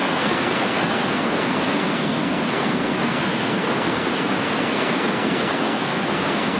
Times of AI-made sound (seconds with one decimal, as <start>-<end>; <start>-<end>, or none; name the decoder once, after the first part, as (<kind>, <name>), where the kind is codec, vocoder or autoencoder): 0.0-6.6 (codec, SNAC)